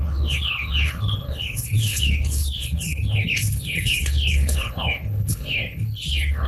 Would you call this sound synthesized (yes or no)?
yes